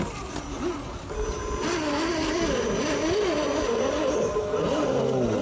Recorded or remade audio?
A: recorded